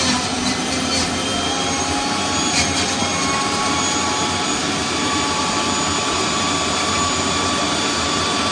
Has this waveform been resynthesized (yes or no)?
yes